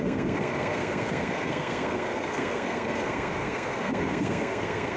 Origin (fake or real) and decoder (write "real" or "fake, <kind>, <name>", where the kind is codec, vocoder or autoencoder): fake, codec, SNAC